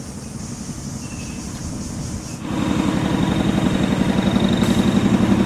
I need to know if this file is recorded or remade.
recorded